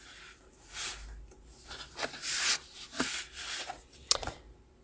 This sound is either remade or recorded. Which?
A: recorded